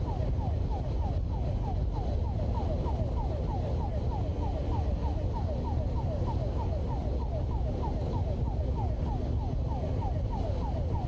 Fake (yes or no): no